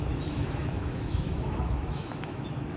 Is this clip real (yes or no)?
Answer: no